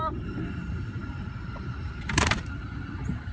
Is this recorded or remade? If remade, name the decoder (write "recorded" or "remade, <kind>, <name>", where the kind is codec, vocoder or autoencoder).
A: remade, vocoder, BigVGAN v2